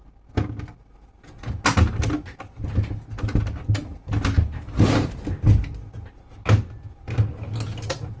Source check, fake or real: real